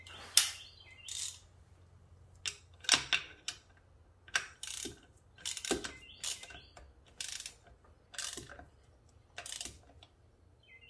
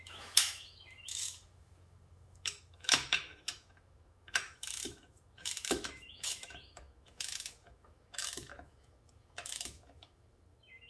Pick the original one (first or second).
first